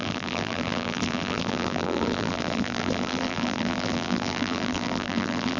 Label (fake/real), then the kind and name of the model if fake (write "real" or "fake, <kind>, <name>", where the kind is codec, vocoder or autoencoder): fake, vocoder, BigVGAN v2